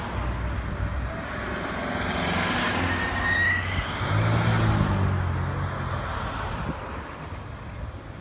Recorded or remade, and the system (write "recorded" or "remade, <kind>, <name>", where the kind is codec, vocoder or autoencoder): recorded